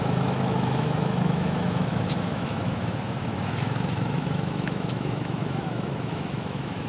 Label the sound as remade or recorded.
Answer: remade